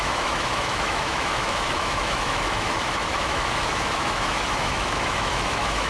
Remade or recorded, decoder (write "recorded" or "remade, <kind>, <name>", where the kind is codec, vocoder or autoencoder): remade, autoencoder, DAC-VAE